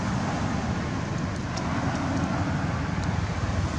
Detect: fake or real real